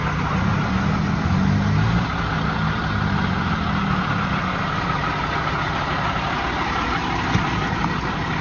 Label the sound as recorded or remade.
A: recorded